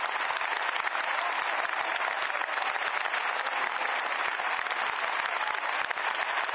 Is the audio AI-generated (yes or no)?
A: no